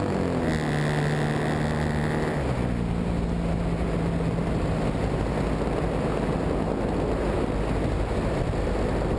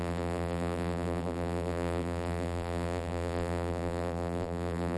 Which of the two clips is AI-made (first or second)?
second